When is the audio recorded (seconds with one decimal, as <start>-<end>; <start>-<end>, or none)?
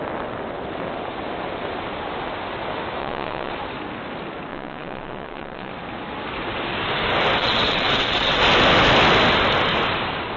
0.0-3.0; 3.5-4.5; 5.7-7.4; 8.4-10.4